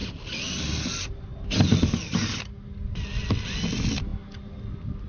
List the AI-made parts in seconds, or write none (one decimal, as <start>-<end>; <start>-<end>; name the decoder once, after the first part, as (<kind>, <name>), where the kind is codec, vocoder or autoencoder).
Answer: none